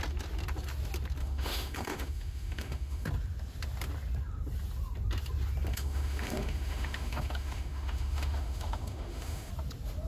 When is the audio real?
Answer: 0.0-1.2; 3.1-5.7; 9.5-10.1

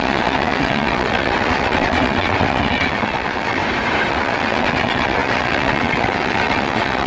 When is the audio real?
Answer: 3.6-4.1

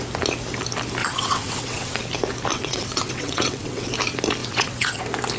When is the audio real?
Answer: 0.0-1.0; 2.0-2.5; 3.9-4.4; 5.0-5.4

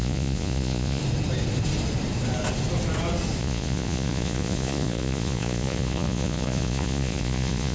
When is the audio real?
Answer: 1.0-3.4

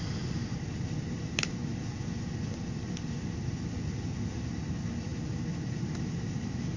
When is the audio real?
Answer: 1.7-4.2; 5.1-6.1

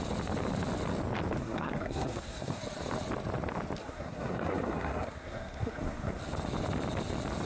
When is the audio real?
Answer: 0.0-1.4; 2.6-3.8; 6.2-7.5

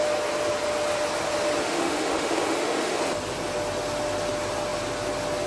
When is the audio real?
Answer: 0.0-1.6; 3.0-5.5

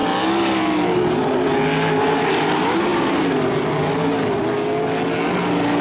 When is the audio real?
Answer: 0.0-5.8